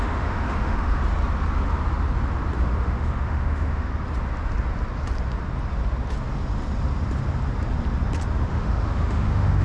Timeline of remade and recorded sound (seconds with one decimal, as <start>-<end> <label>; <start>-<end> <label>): 0.0-1.0 remade; 1.0-2.6 recorded; 2.6-3.9 remade; 3.9-8.4 recorded; 8.4-9.6 remade